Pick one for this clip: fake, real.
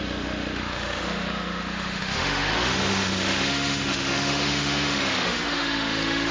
fake